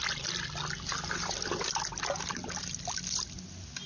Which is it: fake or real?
real